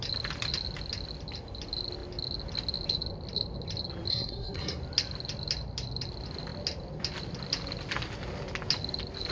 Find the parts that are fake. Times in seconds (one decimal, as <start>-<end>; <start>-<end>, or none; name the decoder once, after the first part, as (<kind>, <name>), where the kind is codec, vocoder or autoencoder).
4.1-4.8 (codec, SNAC)